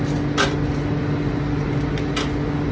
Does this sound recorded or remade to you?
recorded